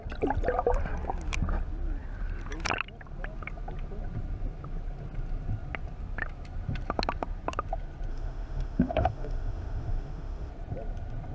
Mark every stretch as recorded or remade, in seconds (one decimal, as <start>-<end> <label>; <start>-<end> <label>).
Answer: 0.0-8.1 recorded; 8.1-10.5 remade; 10.5-11.3 recorded